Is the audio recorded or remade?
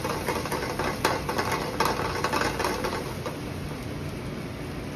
recorded